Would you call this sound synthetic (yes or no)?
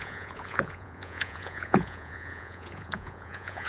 yes